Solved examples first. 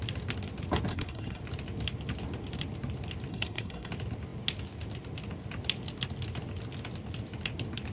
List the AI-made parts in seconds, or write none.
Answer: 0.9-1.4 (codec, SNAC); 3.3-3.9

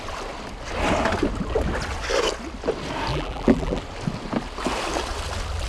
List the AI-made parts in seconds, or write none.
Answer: 3.1-3.8 (vocoder, BigVGAN v2)

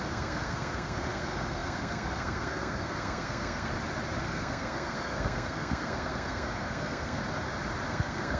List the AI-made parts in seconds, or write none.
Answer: 0.0-3.7 (codec, SNAC); 4.2-7.2; 7.9-8.4

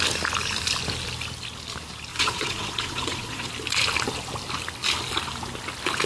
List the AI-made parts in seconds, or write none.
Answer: 2.1-3.5 (vocoder, Vocos)